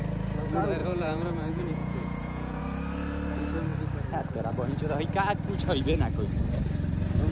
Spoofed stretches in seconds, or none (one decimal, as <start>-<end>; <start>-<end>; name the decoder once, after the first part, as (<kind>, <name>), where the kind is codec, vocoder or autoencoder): 0.8-2.6 (vocoder, Vocos)